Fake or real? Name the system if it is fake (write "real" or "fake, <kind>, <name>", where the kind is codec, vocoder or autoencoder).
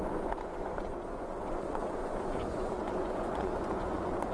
fake, vocoder, Vocos